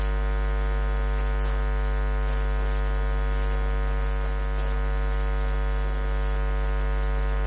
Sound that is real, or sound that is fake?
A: real